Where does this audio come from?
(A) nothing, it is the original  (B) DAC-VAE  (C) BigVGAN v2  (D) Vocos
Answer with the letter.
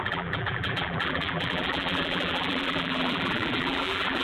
C